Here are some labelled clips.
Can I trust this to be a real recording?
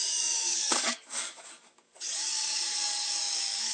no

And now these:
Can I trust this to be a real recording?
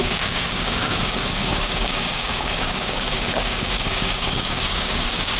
no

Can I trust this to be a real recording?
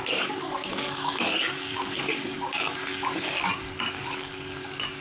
no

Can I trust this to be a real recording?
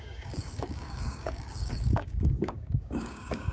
no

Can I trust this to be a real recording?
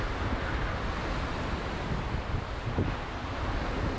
yes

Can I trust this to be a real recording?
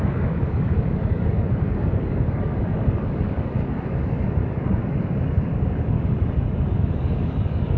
no